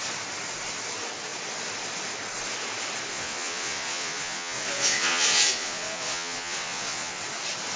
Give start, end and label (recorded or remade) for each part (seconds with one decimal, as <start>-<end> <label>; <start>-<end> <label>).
0.0-3.1 recorded; 3.1-7.2 remade; 7.2-7.8 recorded